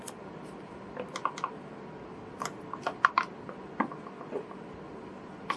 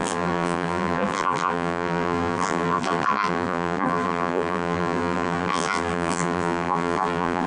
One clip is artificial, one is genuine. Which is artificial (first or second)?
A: second